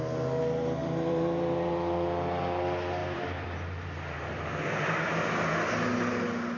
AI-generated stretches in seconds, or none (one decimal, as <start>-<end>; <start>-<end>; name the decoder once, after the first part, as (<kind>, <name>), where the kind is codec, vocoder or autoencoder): 0.8-1.7 (vocoder, BigVGAN v2); 3.0-5.7